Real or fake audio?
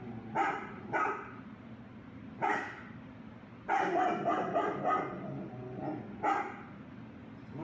real